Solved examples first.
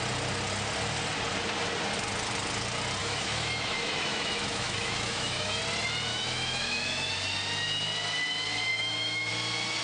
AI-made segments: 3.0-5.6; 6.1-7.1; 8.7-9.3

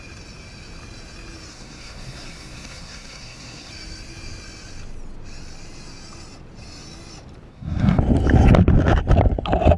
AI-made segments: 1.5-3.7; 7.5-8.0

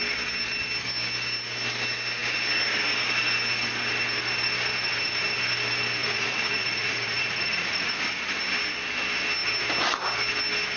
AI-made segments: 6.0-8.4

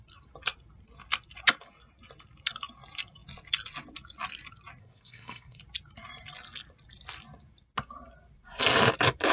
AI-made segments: 4.8-5.6

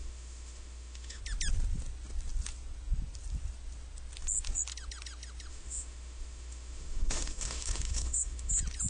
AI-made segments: 0.0-1.2; 5.5-8.5

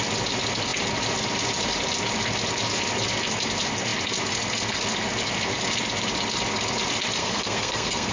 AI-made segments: 7.2-8.1

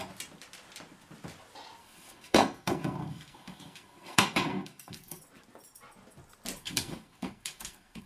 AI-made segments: 1.8-5.2; 6.6-8.1

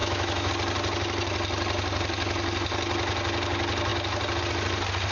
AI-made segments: 0.0-0.5